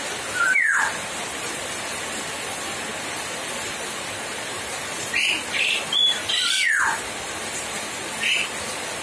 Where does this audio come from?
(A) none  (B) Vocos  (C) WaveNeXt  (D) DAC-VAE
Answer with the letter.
A